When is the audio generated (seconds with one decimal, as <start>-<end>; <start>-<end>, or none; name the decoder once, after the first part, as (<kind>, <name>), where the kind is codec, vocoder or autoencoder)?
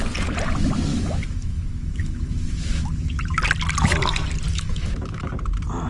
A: 0.9-3.2 (autoencoder, DAC-VAE); 4.5-5.3